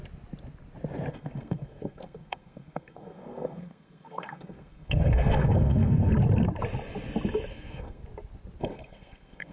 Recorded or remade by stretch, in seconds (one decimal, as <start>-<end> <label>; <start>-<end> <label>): 0.0-1.1 recorded; 1.1-6.1 remade; 6.1-7.5 recorded; 7.5-8.0 remade; 8.0-8.6 recorded; 8.6-9.5 remade